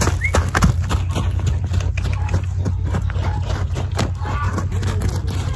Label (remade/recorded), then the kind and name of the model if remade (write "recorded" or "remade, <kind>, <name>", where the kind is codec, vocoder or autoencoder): recorded